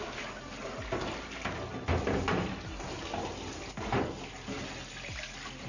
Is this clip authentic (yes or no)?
yes